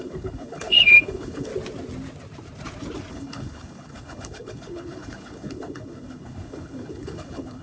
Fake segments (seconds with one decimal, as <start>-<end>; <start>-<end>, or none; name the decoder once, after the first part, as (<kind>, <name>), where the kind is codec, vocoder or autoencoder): 0.0-1.5 (codec, HILCodec); 3.1-7.6

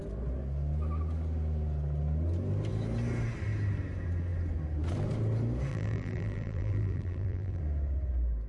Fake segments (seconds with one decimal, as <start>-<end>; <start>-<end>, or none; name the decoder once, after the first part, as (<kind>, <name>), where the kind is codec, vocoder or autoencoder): 5.7-7.6 (vocoder, BigVGAN v2)

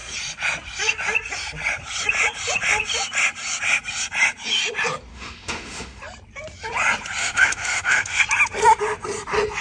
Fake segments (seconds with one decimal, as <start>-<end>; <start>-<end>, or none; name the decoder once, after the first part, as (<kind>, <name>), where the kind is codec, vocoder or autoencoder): 5.1-6.0 (autoencoder, DAC-VAE); 7.2-8.2

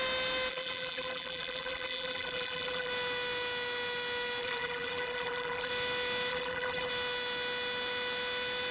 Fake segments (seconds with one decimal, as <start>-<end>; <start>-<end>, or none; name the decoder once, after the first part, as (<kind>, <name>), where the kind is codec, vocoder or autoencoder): 0.5-2.9 (vocoder, BigVGAN v2); 4.4-5.7; 6.3-6.9

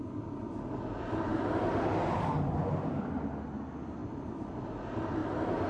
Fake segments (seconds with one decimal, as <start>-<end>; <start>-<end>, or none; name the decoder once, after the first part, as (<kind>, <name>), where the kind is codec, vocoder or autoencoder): 1.3-2.0 (vocoder, BigVGAN v2); 4.0-4.5; 5.2-5.7

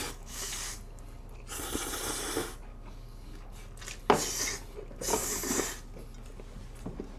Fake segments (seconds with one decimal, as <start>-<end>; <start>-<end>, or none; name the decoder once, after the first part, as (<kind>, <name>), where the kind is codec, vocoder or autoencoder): 0.0-0.8 (codec, DAC); 2.7-3.5; 5.1-5.6